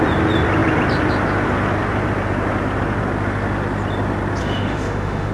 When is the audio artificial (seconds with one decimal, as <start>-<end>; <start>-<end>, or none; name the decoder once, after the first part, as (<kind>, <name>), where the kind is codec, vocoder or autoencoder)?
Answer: 4.4-5.3 (autoencoder, DAC-VAE)